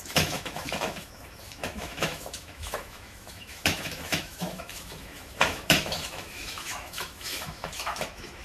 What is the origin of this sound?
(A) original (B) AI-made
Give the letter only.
B